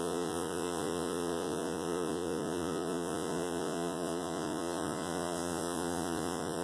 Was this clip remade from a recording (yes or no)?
yes